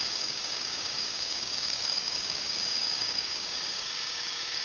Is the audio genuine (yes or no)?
no